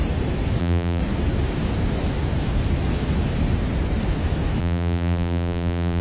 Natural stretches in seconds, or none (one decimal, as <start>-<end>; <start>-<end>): 0.0-0.6; 1.0-4.6